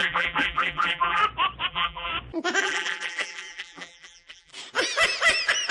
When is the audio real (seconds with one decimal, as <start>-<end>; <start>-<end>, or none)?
1.2-1.7; 2.1-2.6; 4.5-5.7